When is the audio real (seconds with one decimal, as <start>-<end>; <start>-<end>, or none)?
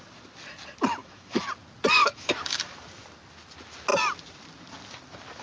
0.0-1.0; 1.5-2.0; 2.6-5.4